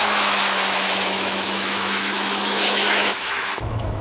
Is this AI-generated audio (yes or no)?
yes